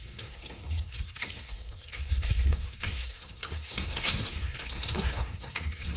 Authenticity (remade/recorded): remade